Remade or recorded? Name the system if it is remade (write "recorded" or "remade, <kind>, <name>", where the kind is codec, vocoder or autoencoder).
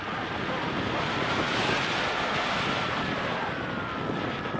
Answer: recorded